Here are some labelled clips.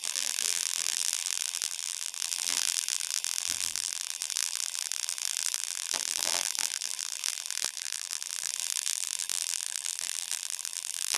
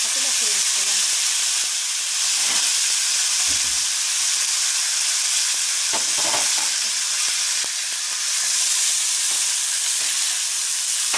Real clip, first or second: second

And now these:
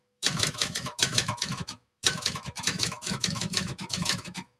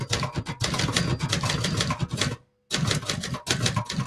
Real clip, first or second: second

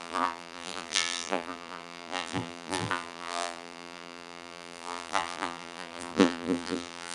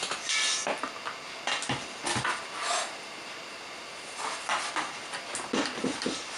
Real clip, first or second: second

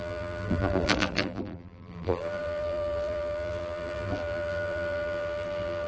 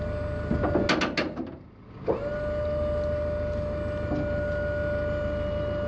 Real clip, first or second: second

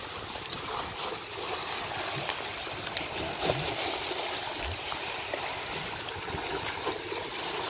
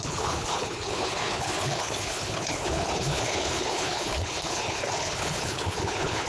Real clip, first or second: first